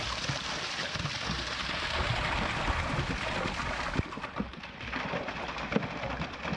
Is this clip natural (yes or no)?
yes